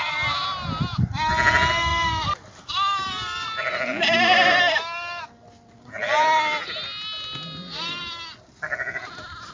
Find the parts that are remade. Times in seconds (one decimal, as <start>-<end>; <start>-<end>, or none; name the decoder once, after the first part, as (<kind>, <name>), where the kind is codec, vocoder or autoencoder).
1.9-5.2 (vocoder, BigVGAN v2)